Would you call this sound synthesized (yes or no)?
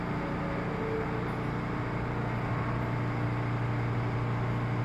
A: no